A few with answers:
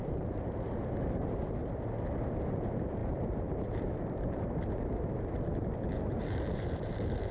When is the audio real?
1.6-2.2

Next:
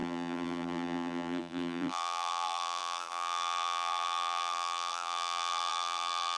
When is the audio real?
none